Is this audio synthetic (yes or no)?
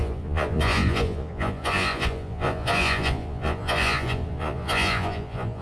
yes